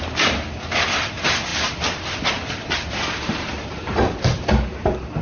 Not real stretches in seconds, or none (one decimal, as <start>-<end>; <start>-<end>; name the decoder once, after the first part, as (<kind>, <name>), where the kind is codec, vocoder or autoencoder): none